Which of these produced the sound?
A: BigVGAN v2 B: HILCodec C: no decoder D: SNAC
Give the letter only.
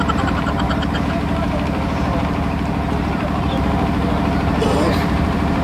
A